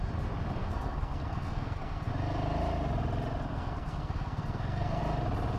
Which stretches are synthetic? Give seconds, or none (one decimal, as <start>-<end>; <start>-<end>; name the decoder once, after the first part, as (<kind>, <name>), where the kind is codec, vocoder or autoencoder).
0.6-2.1 (codec, SNAC); 3.5-5.0